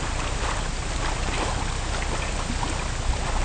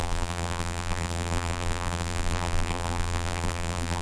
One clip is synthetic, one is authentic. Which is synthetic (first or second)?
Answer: second